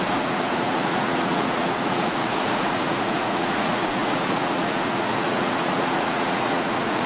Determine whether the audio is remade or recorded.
remade